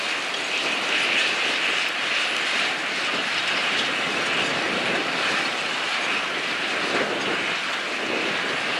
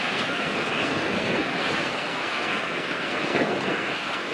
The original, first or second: first